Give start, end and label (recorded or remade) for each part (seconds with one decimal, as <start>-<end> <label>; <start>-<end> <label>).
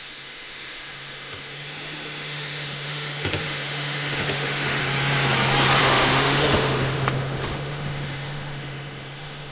0.0-4.8 remade; 4.8-5.8 recorded; 5.8-9.5 remade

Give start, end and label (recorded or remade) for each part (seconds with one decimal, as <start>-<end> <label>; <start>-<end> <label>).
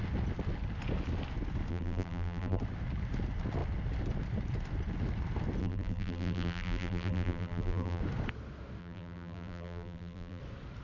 0.0-1.7 recorded; 1.7-2.6 remade; 2.6-5.6 recorded; 5.6-8.0 remade; 8.0-8.8 recorded; 8.8-10.4 remade; 10.4-10.8 recorded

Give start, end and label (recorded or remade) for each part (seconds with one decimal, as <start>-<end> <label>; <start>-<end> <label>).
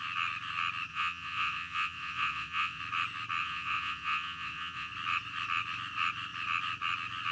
0.0-0.9 recorded; 0.9-2.8 remade; 2.8-3.4 recorded; 3.4-4.9 remade; 4.9-7.3 recorded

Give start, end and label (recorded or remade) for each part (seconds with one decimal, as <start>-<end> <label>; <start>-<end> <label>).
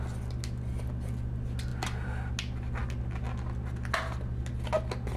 0.0-5.2 recorded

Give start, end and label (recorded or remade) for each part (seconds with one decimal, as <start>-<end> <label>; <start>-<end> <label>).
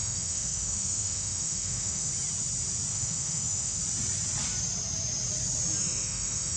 0.0-2.1 remade; 2.1-2.9 recorded; 2.9-3.8 remade; 3.8-5.8 recorded; 5.8-6.6 remade